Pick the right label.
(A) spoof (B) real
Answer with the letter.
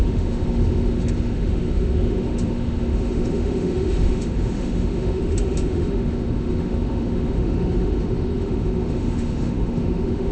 A